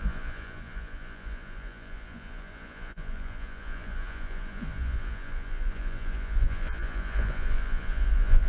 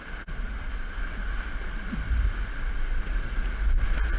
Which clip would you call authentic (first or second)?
second